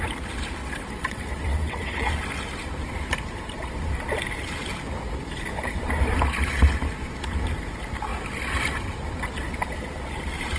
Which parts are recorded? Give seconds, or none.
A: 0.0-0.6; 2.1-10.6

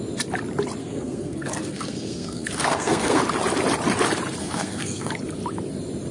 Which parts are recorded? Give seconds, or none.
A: 0.0-0.8; 3.2-4.4; 5.1-6.1

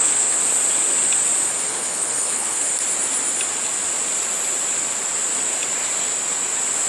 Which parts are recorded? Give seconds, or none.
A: 0.4-1.7; 2.7-6.9

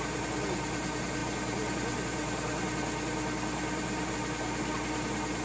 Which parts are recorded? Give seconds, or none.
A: 0.0-5.4

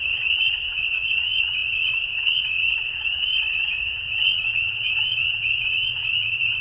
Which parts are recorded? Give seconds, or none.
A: none

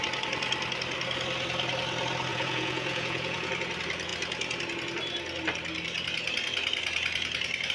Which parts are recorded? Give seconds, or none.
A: 0.0-2.3; 3.5-7.7